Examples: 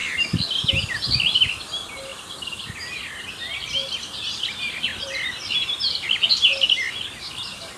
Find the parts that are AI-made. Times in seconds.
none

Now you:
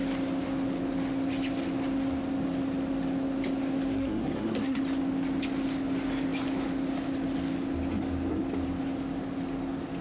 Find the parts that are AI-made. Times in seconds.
3.9-4.8 (codec, SNAC)

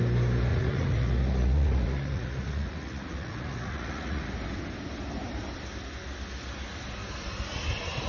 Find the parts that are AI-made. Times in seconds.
0.5-4.3 (vocoder, Vocos)

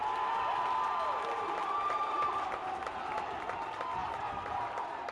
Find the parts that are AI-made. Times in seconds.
4.0-5.1 (vocoder, BigVGAN v2)

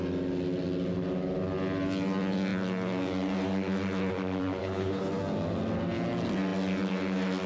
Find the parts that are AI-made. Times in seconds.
4.6-5.1 (codec, HILCodec)

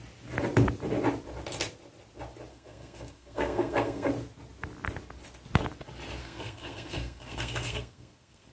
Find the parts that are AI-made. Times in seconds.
2.5-4.1 (codec, SNAC); 6.2-8.5